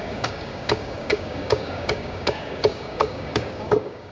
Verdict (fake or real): fake